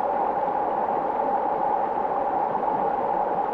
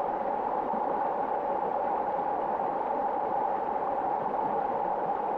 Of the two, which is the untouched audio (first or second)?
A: first